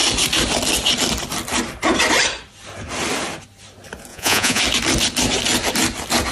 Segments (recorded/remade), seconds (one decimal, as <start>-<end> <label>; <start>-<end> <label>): 0.0-4.1 recorded; 4.1-4.6 remade; 4.6-6.3 recorded